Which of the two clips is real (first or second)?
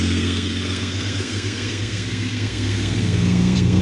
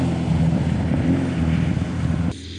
second